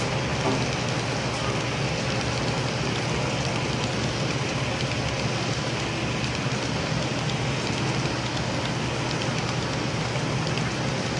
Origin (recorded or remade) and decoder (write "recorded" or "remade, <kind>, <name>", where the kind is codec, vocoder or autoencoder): recorded